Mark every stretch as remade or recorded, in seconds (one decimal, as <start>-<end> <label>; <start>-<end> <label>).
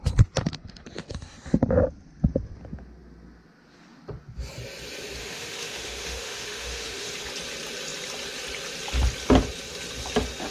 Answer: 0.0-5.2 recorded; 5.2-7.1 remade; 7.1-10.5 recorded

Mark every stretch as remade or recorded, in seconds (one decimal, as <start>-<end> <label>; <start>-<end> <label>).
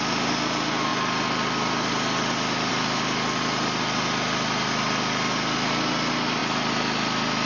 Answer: 0.0-7.5 recorded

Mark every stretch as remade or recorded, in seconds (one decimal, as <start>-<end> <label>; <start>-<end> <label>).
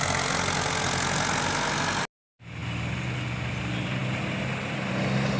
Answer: 0.0-5.4 recorded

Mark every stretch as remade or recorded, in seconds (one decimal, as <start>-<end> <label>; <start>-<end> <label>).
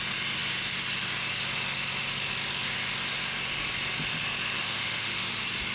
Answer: 0.0-4.6 recorded; 4.6-5.3 remade; 5.3-5.7 recorded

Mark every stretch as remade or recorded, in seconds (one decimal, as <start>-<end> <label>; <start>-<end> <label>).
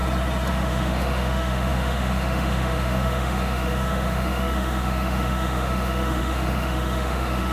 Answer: 0.0-0.5 recorded; 0.5-7.5 remade